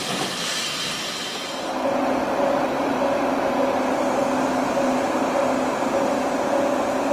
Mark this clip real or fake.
real